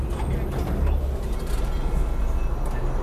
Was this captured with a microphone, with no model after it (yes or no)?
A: yes